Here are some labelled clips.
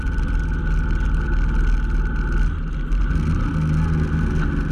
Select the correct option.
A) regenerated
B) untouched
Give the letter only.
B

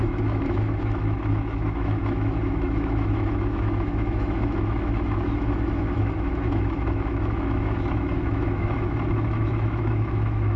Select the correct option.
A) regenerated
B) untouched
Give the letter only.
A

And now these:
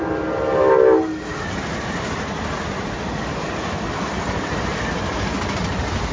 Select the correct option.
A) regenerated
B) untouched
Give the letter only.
B